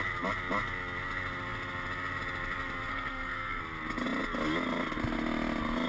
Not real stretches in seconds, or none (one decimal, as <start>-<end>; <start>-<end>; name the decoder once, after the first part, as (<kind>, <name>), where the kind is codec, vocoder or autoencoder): 2.9-3.6 (codec, SNAC)